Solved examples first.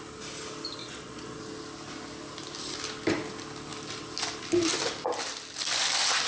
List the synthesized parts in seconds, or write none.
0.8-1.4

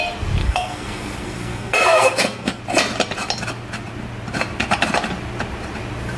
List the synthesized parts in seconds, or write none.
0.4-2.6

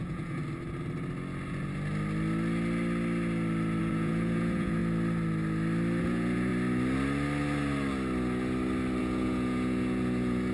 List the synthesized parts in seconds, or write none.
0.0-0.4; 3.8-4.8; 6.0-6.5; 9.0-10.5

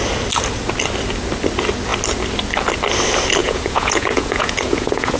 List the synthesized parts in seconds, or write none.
3.4-5.2

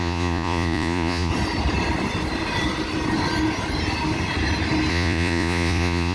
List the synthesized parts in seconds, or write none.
0.0-1.3; 4.9-6.1

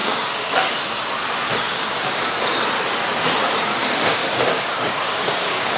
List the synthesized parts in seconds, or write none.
0.0-0.7; 1.5-2.2; 4.1-5.8

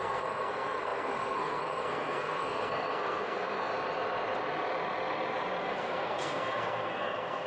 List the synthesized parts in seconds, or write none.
0.0-3.7; 5.6-7.5